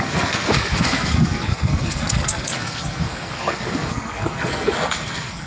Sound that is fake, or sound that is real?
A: fake